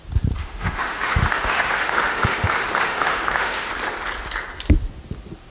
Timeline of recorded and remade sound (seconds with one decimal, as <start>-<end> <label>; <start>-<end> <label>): 0.0-0.4 recorded; 0.4-3.7 remade; 3.7-5.5 recorded